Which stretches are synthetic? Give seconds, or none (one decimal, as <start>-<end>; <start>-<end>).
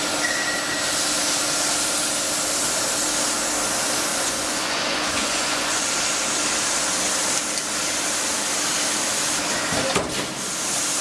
4.1-5.9